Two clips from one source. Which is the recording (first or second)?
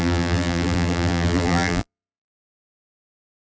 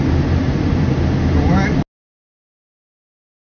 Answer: second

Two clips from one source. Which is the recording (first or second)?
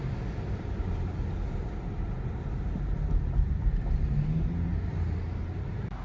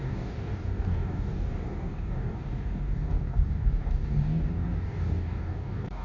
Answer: first